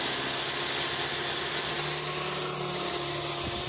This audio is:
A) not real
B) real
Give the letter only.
B